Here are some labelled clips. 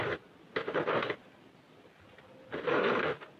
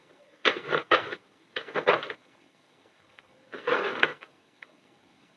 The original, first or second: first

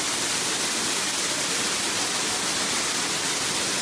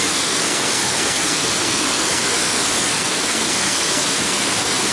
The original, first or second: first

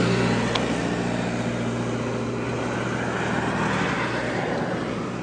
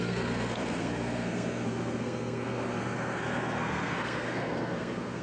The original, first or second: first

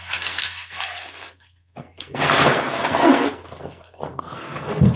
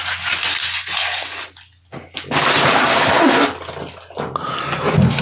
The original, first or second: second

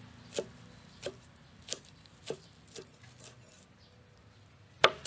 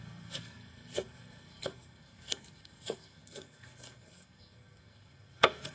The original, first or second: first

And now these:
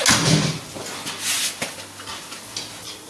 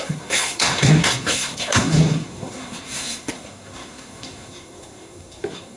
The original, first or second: first